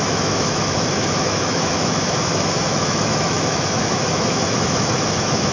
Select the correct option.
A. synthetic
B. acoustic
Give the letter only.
A